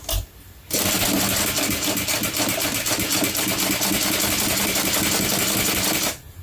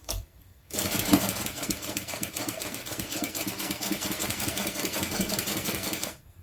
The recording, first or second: first